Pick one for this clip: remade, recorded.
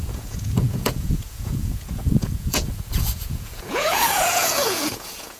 remade